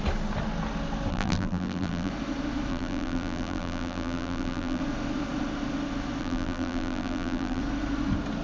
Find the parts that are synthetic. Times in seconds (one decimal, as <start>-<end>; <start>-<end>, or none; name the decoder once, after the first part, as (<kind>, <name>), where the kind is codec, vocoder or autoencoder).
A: 1.1-2.1 (vocoder, BigVGAN v2); 2.7-4.8; 6.2-7.6